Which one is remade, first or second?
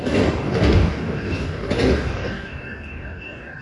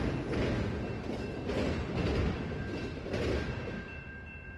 first